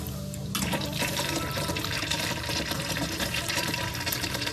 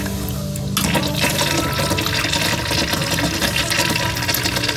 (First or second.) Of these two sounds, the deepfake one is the first